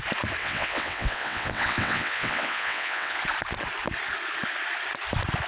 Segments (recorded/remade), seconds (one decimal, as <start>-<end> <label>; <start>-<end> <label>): 0.0-0.4 recorded; 0.4-3.2 remade; 3.2-5.5 recorded